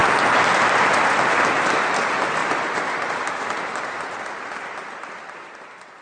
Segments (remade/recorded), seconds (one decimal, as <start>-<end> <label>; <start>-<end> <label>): 0.0-6.0 recorded